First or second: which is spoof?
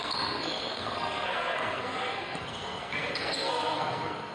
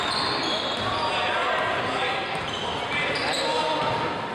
first